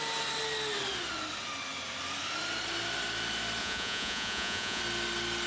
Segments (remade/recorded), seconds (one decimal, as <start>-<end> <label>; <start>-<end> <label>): 0.0-3.6 recorded; 3.6-4.8 remade; 4.8-5.5 recorded